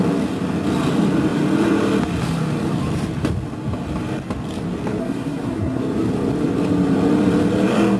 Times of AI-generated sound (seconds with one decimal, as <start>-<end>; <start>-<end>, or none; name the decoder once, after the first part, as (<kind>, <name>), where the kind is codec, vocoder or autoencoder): 5.0-5.8 (codec, SNAC)